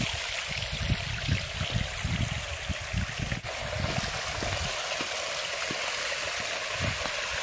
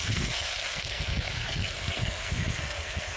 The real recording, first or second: first